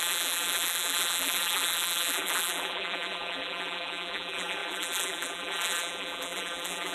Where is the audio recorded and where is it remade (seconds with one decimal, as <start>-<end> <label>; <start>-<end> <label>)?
0.0-6.9 remade